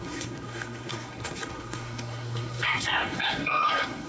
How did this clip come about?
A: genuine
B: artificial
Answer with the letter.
B